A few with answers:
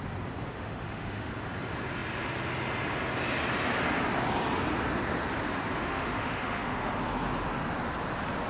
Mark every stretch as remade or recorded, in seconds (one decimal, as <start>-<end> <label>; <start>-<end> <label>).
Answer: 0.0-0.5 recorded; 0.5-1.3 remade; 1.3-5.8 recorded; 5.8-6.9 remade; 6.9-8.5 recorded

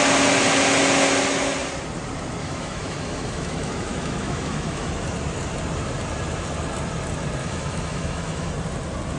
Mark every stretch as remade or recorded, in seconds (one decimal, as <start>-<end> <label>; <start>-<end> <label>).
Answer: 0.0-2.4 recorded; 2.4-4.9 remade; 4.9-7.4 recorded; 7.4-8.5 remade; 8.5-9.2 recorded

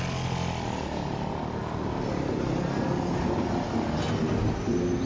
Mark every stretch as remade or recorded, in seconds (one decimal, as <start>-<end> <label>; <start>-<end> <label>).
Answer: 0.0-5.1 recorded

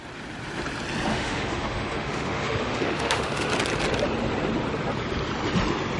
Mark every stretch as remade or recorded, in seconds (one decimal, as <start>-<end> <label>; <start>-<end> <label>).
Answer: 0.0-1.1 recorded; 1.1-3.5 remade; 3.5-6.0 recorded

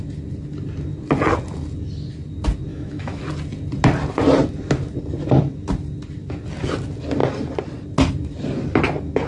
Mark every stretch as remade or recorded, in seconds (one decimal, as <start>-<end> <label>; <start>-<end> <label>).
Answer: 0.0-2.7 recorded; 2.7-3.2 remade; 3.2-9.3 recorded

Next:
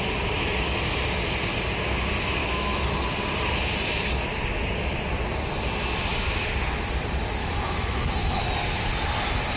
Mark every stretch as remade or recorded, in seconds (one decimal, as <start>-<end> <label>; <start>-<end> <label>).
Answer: 0.0-2.4 recorded; 2.4-2.9 remade; 2.9-7.4 recorded; 7.4-8.4 remade; 8.4-9.6 recorded